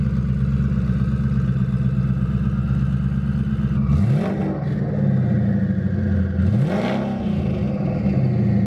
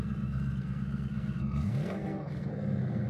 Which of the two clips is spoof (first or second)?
second